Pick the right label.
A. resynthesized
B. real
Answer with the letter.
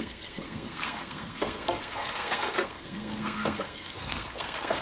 A